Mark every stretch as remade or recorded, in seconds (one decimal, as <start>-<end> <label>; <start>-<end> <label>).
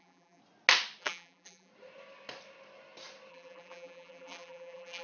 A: 0.0-0.4 remade; 0.4-1.0 recorded; 1.0-1.7 remade; 1.7-3.3 recorded; 3.3-5.0 remade